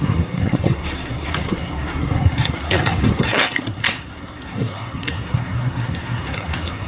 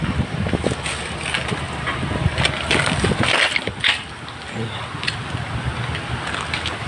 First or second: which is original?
second